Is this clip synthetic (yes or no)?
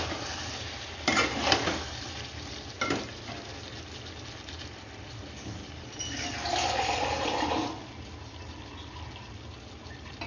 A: no